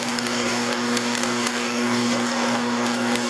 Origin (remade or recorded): remade